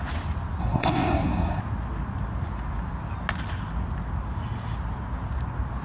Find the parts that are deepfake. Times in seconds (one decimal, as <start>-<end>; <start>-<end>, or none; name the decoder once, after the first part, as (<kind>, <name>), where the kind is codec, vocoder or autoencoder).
0.6-1.6 (codec, SNAC)

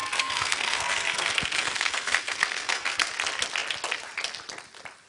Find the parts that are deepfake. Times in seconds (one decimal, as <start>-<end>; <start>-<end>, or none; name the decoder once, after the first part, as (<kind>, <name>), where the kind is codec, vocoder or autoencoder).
0.0-3.1 (codec, SNAC)

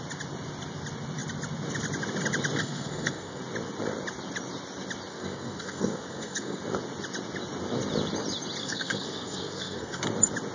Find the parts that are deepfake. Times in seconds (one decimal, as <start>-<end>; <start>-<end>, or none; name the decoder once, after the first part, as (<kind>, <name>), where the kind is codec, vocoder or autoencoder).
2.6-3.4 (codec, SNAC); 5.1-6.6; 8.6-10.1

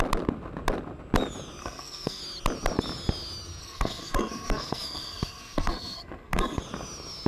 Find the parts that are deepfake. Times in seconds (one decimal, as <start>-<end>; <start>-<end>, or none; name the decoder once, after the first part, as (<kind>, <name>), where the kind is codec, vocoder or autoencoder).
1.6-2.2 (codec, SNAC); 3.6-6.6

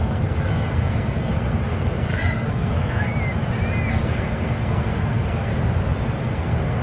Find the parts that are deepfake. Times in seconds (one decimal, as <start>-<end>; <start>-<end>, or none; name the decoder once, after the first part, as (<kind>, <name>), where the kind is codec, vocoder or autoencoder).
0.0-3.1 (codec, SNAC); 3.9-5.5; 6.2-6.8

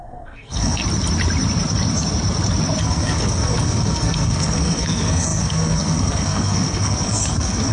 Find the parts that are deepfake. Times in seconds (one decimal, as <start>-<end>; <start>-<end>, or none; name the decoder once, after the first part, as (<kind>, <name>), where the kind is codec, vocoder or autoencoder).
0.0-0.8 (codec, SNAC); 2.8-7.7

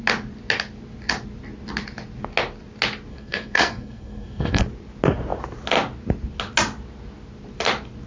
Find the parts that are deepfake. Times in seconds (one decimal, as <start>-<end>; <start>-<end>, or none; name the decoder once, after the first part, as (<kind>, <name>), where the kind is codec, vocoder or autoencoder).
3.1-4.6 (codec, SNAC)